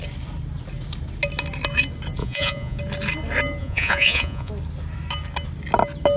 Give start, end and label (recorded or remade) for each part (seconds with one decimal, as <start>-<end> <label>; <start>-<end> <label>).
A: 0.0-2.2 recorded; 2.2-2.8 remade; 2.8-3.6 recorded; 3.6-4.5 remade; 4.5-6.2 recorded